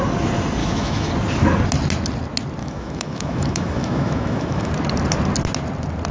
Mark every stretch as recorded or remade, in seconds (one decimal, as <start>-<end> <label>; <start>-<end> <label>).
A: 0.0-0.6 recorded; 0.6-1.1 remade; 1.1-2.6 recorded; 2.6-4.7 remade; 4.7-6.1 recorded